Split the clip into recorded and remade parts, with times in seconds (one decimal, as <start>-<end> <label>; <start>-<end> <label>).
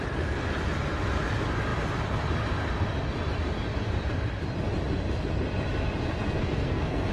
0.0-6.4 recorded; 6.4-7.1 remade